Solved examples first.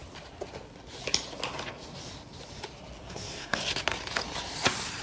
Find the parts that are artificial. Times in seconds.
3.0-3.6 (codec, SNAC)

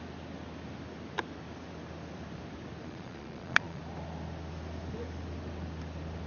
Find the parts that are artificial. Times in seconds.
2.8-3.8 (vocoder, Vocos)

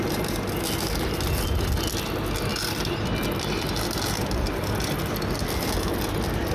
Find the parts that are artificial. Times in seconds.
none